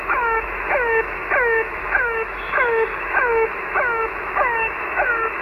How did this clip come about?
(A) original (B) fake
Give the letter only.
B